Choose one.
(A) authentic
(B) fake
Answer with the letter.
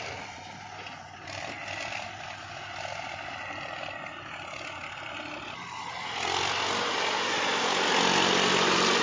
A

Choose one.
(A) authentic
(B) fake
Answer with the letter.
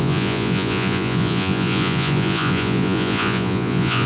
B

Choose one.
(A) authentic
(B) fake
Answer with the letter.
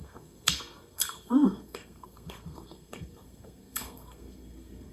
B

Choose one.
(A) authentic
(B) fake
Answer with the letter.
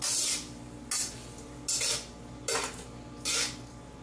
A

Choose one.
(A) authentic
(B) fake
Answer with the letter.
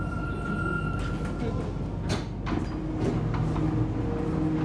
A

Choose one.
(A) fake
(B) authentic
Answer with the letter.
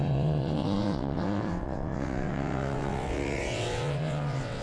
A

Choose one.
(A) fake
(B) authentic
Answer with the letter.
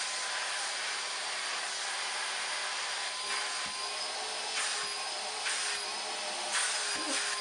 B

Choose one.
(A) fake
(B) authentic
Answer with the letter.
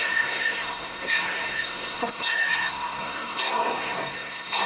A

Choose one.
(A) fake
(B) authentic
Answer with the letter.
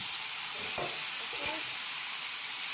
B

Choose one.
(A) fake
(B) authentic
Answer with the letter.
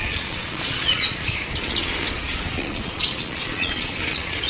A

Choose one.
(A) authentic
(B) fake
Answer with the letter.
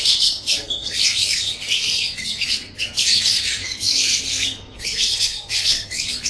B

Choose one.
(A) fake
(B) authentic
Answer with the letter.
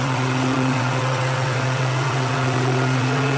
A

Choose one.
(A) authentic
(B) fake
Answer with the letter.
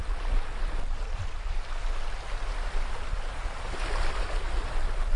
B